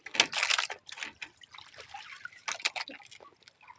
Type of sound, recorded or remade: recorded